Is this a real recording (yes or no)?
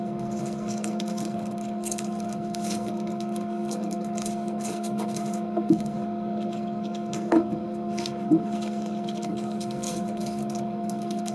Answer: no